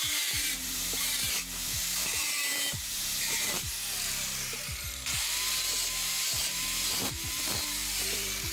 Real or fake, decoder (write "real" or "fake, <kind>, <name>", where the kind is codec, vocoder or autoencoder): fake, vocoder, BigVGAN v2